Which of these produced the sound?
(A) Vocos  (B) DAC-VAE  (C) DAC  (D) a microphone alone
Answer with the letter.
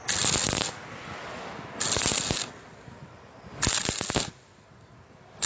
D